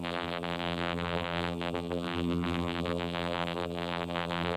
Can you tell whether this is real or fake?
fake